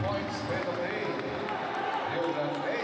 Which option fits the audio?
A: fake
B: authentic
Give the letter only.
B